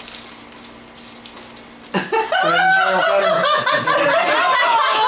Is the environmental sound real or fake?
real